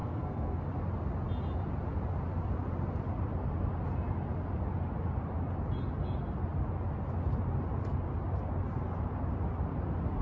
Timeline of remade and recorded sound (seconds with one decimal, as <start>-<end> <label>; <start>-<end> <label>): 0.0-0.7 remade; 0.7-10.2 recorded